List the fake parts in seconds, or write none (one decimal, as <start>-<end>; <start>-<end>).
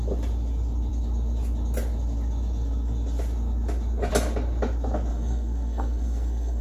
5.1-6.6